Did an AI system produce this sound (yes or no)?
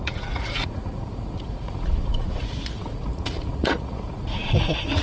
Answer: yes